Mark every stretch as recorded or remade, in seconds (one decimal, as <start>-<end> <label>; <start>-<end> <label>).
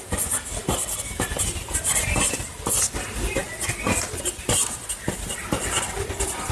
0.0-6.5 recorded